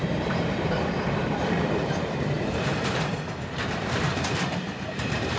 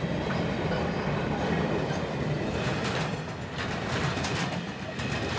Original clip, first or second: second